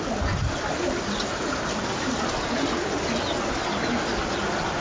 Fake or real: real